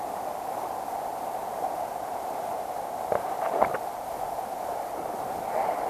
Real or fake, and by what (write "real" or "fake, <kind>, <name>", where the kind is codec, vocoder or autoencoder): real